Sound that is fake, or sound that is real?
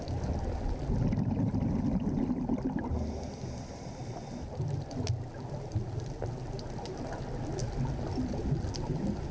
real